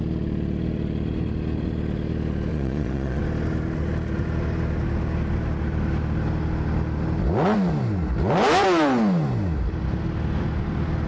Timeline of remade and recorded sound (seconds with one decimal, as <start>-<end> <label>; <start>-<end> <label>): 0.0-2.5 recorded; 2.5-3.2 remade; 3.2-11.1 recorded